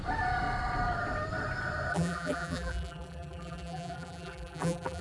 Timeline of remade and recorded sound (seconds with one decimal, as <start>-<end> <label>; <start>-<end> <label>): 0.0-1.9 recorded; 1.9-5.0 remade